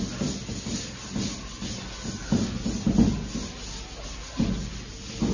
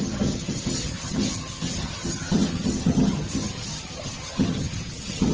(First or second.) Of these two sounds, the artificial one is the second